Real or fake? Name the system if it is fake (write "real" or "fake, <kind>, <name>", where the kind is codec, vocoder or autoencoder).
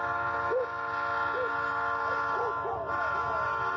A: real